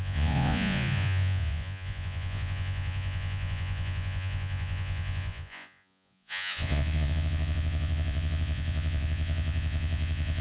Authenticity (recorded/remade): remade